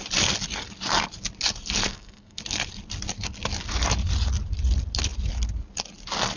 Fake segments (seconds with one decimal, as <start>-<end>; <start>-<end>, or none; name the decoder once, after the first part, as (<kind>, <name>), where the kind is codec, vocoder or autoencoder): 1.9-2.4 (codec, SNAC)